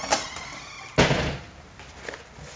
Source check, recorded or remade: recorded